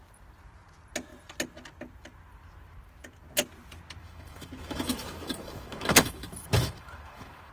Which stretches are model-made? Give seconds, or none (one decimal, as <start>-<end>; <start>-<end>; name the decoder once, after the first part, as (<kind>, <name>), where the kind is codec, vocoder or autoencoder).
4.0-7.5 (autoencoder, DAC-VAE)